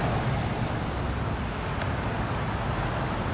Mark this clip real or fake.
real